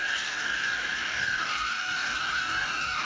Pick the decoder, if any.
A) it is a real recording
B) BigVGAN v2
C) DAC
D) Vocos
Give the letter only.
C